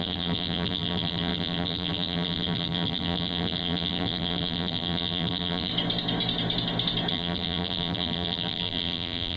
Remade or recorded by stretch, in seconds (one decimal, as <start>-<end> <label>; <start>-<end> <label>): 0.0-5.7 remade; 5.7-7.1 recorded; 7.1-9.4 remade